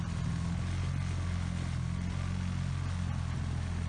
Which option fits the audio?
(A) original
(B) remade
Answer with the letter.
A